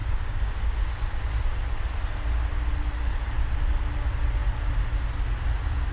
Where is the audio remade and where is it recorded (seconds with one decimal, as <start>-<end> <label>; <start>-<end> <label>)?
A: 0.0-0.5 remade; 0.5-5.9 recorded